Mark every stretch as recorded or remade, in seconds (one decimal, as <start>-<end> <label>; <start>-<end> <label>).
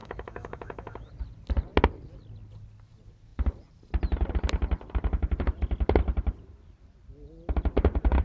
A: 0.0-1.1 remade; 1.1-8.2 recorded